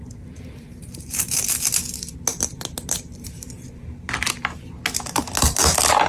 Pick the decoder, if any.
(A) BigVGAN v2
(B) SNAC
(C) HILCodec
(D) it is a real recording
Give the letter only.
D